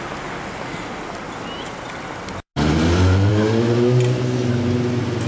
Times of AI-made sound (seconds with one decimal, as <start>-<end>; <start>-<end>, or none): none